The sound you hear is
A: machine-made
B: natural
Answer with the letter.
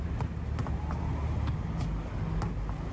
B